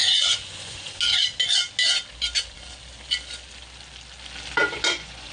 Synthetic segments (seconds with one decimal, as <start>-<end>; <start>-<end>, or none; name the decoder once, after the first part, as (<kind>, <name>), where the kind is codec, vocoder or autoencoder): 0.0-1.0 (vocoder, Vocos); 4.6-5.3